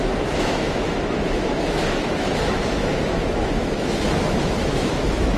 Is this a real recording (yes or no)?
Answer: no